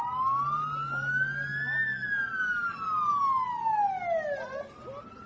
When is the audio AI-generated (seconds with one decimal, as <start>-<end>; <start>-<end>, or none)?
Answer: none